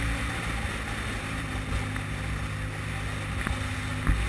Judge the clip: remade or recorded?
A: recorded